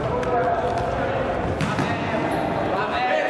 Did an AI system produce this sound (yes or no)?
no